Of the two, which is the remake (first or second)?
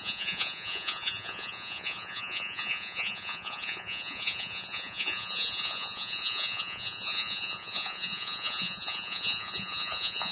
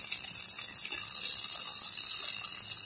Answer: first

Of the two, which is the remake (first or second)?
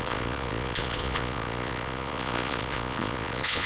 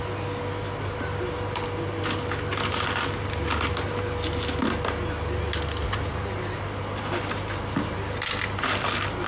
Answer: first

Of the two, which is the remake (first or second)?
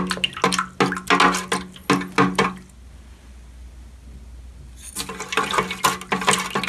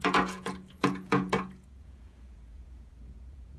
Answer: second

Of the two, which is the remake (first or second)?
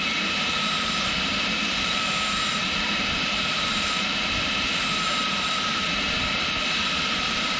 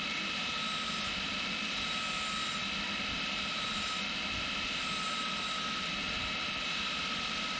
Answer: first